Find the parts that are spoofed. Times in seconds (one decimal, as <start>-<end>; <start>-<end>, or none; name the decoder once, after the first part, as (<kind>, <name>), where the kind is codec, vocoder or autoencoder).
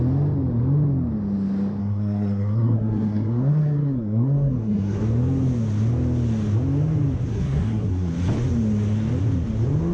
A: 1.8-5.0 (codec, SNAC); 7.3-8.1